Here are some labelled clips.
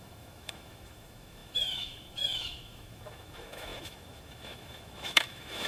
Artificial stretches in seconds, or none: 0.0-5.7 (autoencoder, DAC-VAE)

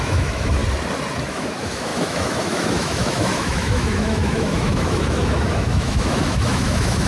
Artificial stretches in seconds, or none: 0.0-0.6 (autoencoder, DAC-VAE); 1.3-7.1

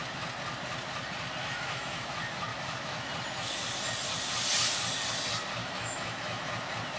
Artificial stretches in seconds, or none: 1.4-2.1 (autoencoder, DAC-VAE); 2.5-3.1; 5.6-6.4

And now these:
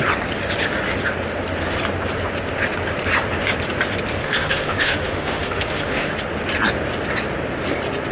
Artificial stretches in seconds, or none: 4.2-6.1 (autoencoder, DAC-VAE)

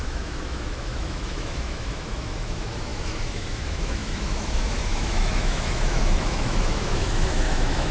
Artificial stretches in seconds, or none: 0.0-7.9 (autoencoder, DAC-VAE)